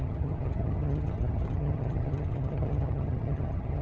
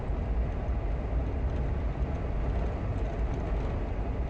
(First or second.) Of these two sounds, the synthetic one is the first